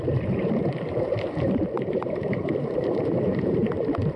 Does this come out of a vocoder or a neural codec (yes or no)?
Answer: yes